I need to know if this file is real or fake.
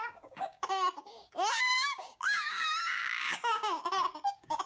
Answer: fake